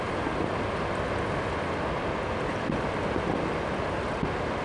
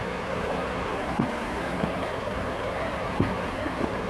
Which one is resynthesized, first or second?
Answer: second